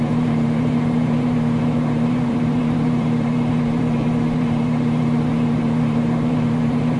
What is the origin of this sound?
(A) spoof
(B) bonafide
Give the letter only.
A